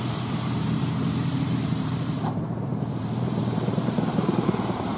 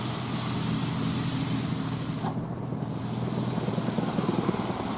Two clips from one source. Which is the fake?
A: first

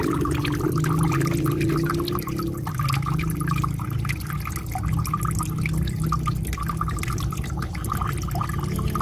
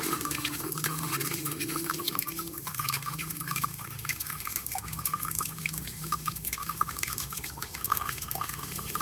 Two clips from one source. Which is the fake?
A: second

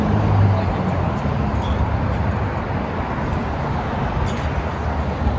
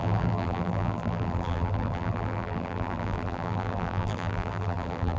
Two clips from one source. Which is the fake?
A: second